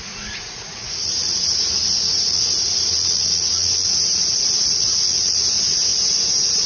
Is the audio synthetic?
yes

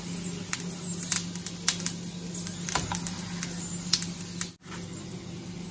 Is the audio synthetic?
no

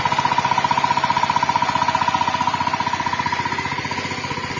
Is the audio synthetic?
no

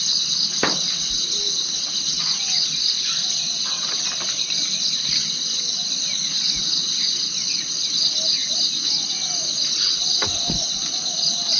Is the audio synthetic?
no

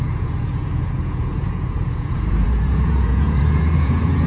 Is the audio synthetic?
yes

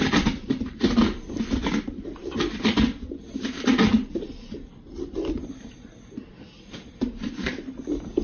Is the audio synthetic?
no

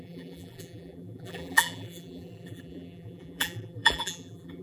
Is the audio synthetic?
yes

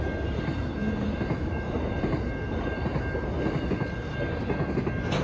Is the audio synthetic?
no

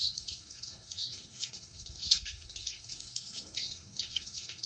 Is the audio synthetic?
yes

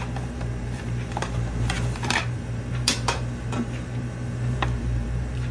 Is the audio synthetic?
yes